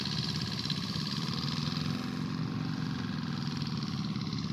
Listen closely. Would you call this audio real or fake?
real